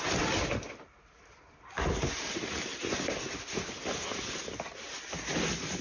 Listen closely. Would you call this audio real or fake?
real